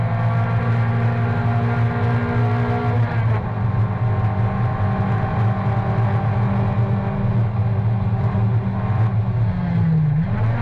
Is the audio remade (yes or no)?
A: no